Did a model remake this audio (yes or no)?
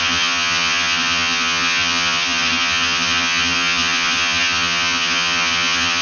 yes